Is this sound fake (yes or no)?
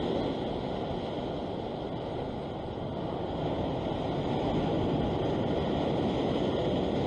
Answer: no